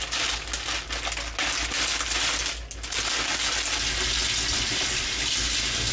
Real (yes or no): yes